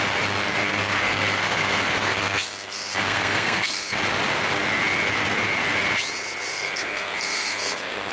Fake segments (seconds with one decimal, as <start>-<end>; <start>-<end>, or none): 0.6-3.9; 6.5-8.1

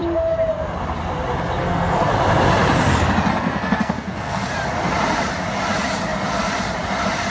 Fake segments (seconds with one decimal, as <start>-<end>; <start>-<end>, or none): 1.6-2.1; 3.3-4.5